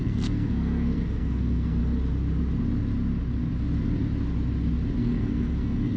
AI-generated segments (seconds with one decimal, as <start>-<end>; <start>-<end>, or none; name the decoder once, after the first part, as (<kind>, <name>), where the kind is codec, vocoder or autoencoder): 0.0-1.8 (codec, SNAC); 5.0-6.0